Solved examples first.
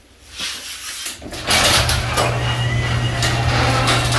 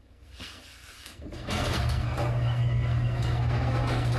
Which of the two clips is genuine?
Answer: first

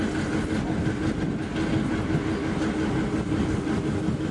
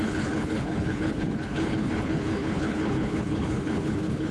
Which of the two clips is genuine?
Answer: first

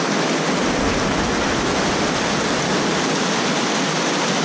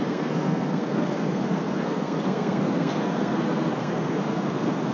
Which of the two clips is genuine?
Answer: first